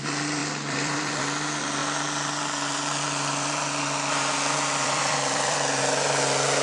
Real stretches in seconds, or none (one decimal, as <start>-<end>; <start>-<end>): 0.0-0.4; 1.2-1.8; 5.8-6.6